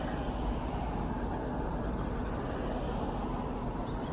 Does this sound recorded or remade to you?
recorded